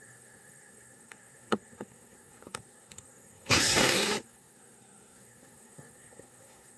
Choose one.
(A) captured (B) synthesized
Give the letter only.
B